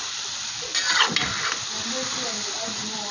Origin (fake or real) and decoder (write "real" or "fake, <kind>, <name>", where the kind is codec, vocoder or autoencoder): real